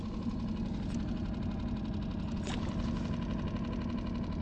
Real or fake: real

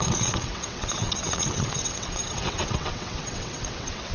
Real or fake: fake